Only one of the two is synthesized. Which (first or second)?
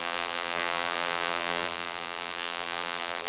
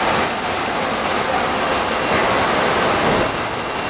first